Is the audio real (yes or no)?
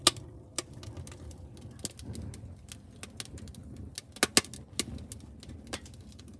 yes